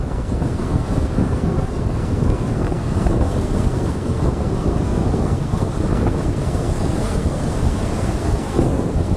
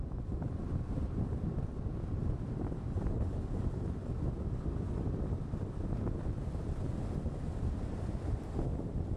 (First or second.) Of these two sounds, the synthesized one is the first